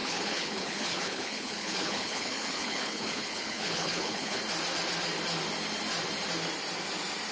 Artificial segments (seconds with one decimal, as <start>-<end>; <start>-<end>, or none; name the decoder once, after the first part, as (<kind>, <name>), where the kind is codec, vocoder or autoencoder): 0.0-4.4 (codec, HILCodec)